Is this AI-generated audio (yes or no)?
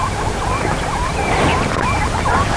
no